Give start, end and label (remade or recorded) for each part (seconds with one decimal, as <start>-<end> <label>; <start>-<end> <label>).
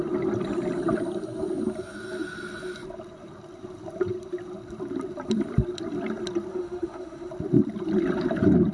0.0-6.5 recorded; 6.5-7.3 remade; 7.3-8.7 recorded